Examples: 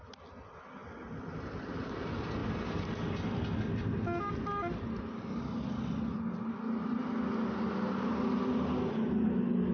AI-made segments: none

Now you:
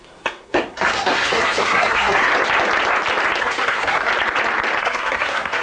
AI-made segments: 0.0-2.3 (codec, SNAC); 3.4-4.1; 4.8-5.6